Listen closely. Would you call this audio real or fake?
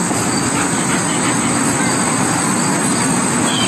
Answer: real